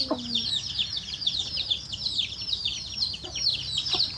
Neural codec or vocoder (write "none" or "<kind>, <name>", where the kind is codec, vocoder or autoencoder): none